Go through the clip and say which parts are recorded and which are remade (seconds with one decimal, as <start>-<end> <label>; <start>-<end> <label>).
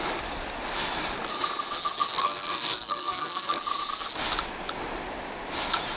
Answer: 0.0-2.2 recorded; 2.2-3.6 remade; 3.6-6.0 recorded